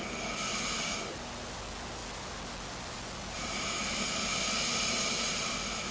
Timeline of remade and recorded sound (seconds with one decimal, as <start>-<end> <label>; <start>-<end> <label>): 0.0-5.9 recorded